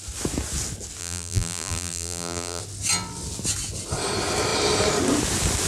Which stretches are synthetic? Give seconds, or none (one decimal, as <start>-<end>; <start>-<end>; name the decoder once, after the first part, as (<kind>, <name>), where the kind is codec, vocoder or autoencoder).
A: 1.0-2.6 (vocoder, BigVGAN v2)